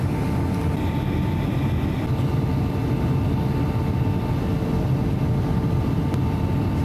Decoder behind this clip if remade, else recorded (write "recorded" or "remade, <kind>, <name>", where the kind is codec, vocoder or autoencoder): recorded